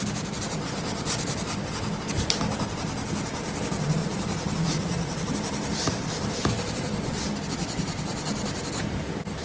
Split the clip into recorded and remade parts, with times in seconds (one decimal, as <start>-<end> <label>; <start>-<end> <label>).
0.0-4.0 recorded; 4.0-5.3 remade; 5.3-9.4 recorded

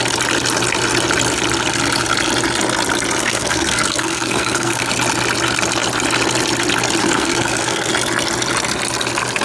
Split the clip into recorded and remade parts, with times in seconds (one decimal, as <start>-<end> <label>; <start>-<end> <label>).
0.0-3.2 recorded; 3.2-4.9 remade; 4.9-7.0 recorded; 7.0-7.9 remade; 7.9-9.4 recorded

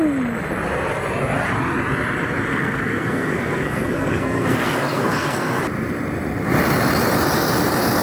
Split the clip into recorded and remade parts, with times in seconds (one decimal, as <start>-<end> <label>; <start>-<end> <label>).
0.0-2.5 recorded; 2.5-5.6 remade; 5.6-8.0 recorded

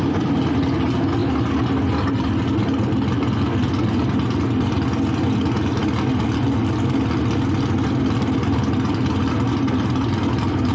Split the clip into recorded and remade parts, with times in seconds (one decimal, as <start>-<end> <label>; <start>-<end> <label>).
0.0-10.7 recorded